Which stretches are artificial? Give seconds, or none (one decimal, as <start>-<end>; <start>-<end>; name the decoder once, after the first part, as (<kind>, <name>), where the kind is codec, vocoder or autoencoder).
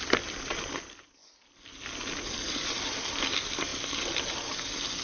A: none